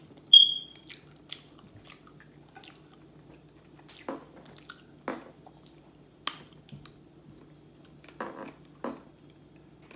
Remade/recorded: recorded